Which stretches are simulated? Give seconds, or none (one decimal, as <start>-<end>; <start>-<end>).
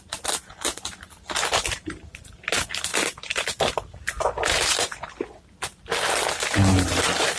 none